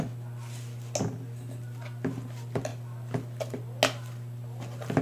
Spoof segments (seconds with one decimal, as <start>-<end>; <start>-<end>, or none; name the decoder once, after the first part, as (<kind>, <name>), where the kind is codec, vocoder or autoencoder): none